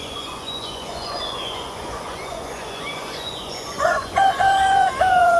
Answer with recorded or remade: remade